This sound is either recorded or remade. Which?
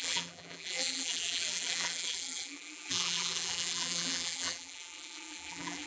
remade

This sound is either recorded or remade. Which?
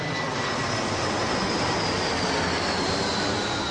recorded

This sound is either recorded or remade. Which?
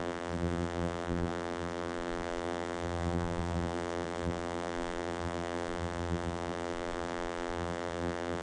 remade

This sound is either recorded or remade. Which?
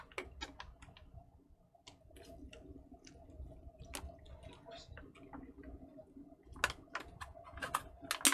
recorded